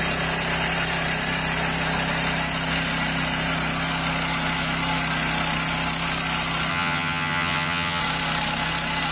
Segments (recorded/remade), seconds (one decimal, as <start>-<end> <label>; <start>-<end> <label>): 0.0-6.7 recorded; 6.7-8.0 remade; 8.0-9.1 recorded